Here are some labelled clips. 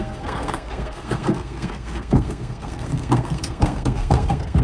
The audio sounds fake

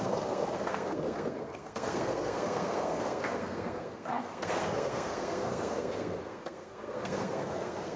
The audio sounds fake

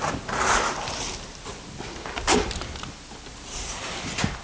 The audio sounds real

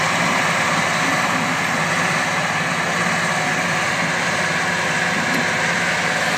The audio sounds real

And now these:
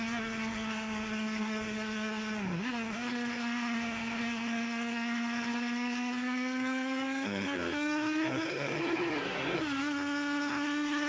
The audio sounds fake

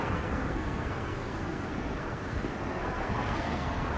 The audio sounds fake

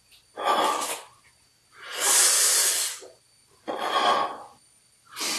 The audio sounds real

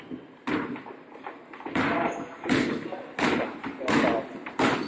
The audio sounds real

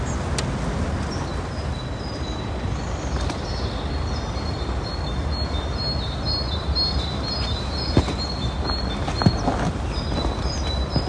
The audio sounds real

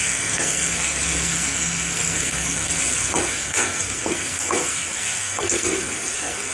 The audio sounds fake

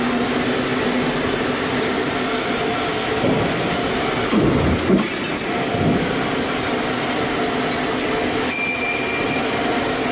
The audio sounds real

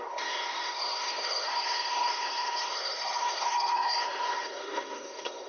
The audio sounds fake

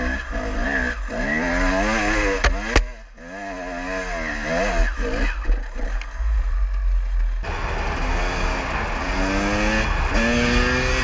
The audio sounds real